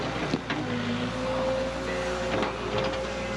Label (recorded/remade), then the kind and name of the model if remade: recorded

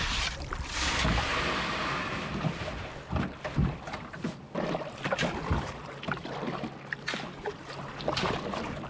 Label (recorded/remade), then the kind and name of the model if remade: recorded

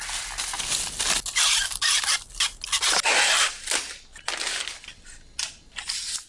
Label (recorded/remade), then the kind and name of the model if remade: recorded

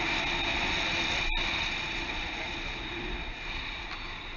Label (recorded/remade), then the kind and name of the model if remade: recorded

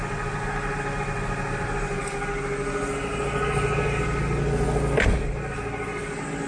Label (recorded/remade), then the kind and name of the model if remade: recorded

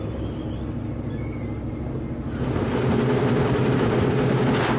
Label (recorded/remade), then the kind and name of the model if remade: recorded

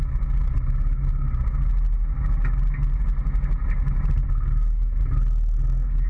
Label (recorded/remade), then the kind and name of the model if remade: recorded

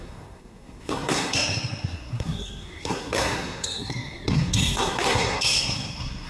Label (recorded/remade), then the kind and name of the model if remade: remade, codec, SNAC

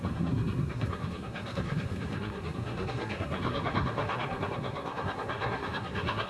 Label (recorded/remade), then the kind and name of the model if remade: remade, codec, SNAC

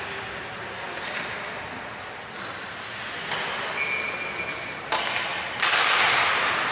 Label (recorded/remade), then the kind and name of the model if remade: recorded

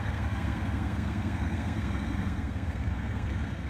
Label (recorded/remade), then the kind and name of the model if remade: remade, codec, SNAC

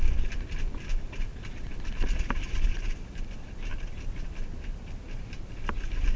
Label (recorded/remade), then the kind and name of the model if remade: recorded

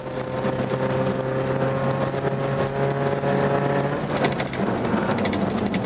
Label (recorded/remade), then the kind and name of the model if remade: recorded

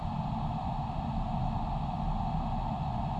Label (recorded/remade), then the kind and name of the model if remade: recorded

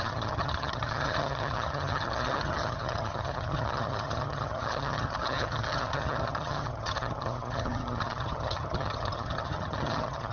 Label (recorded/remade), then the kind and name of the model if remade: remade, vocoder, HiFi-GAN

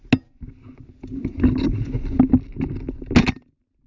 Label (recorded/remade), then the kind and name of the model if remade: recorded